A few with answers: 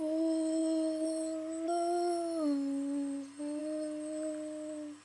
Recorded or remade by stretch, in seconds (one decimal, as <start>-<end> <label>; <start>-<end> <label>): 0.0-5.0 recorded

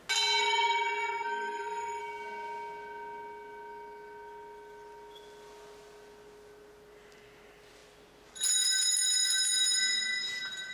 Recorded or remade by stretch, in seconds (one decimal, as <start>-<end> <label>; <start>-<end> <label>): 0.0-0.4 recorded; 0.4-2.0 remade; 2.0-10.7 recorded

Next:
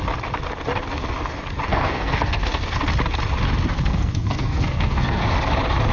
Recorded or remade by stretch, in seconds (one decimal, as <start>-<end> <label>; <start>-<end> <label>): 0.0-1.7 recorded; 1.7-2.8 remade; 2.8-3.7 recorded; 3.7-5.2 remade; 5.2-5.9 recorded

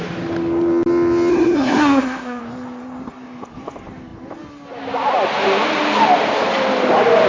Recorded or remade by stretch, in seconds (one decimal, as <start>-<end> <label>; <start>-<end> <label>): 0.0-1.3 recorded; 1.3-2.4 remade; 2.4-7.3 recorded